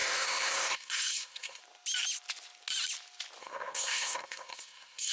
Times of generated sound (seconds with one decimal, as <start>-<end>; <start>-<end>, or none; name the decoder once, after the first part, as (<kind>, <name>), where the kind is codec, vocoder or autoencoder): 0.0-1.6 (codec, SNAC); 3.4-5.1